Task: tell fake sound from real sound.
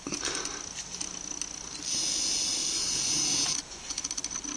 real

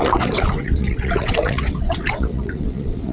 fake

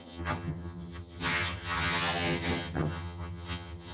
fake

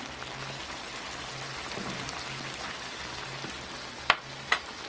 real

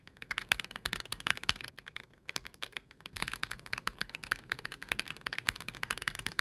fake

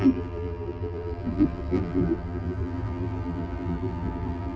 fake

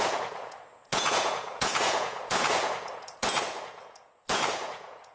fake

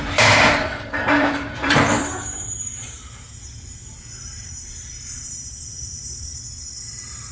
fake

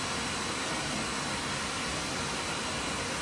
real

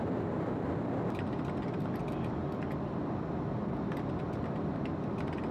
real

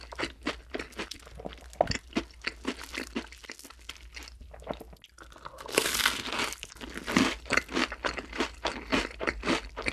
real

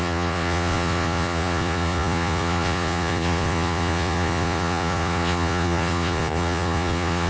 fake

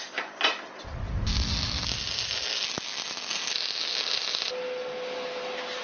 real